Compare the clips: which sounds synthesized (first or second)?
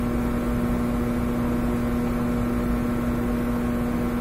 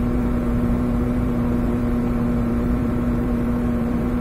second